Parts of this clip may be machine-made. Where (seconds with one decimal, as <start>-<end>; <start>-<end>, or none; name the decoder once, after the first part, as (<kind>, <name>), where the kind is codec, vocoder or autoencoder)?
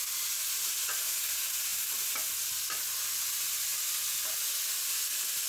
1.7-2.5 (vocoder, BigVGAN v2)